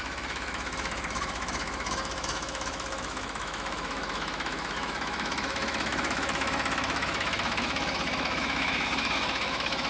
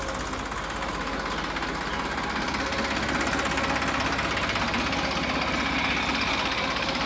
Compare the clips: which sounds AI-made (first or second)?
first